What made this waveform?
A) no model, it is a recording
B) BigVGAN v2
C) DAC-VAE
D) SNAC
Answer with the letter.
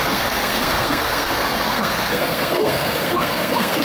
D